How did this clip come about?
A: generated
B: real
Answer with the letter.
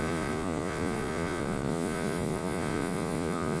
A